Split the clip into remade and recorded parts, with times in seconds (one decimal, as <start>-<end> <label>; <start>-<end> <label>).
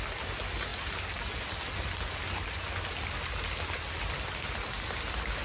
0.0-5.4 recorded